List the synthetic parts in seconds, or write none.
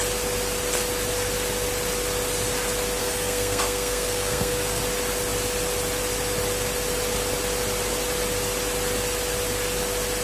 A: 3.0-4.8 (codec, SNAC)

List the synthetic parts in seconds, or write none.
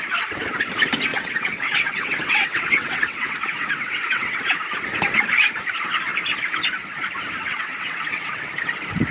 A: 1.1-4.4 (vocoder, WaveNeXt); 7.4-8.5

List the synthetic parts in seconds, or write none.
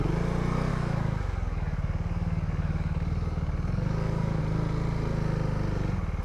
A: 0.7-4.4 (codec, DAC)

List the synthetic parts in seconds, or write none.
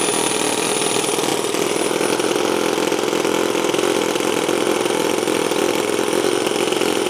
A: none